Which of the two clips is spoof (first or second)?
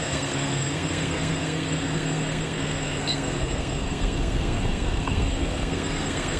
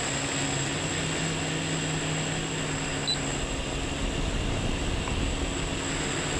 first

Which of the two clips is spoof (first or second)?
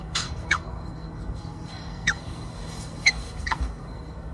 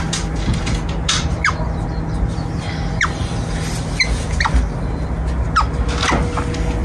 first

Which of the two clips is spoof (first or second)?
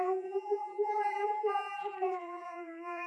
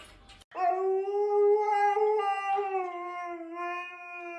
first